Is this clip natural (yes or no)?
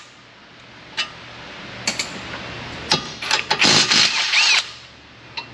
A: yes